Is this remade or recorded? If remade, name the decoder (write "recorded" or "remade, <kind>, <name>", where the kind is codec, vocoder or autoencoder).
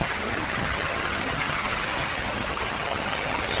remade, vocoder, HiFi-GAN